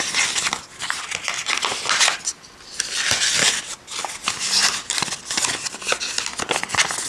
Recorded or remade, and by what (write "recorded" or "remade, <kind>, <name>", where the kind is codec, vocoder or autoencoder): recorded